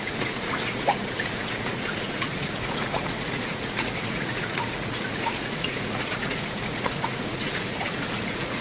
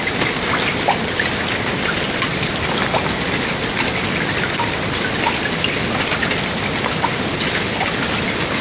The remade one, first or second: first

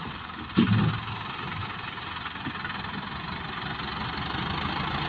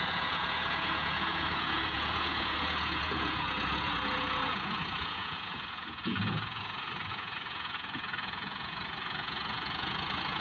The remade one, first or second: second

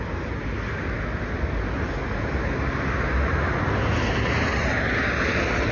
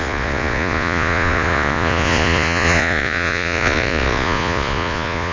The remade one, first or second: second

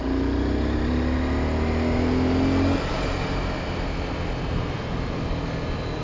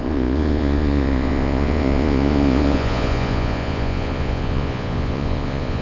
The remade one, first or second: second